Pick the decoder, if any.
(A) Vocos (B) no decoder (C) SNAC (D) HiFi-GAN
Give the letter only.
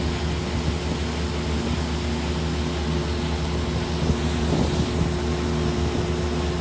B